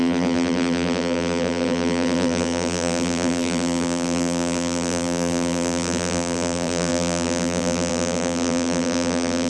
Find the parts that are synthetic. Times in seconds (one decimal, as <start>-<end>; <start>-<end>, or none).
0.0-9.5